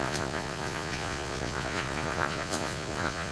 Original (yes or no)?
no